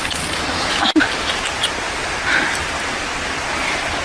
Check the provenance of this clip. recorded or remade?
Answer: recorded